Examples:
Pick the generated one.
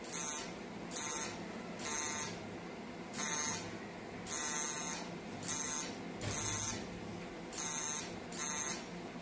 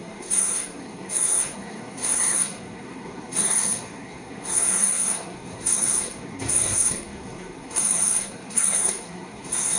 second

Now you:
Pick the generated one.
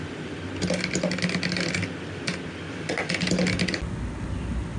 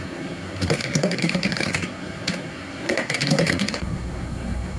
second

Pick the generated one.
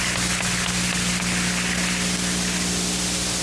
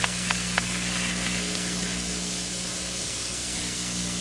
second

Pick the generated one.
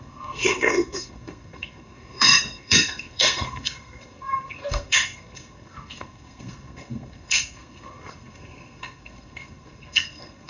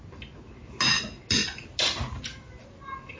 first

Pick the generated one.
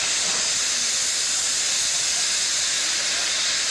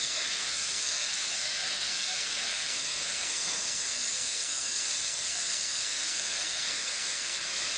second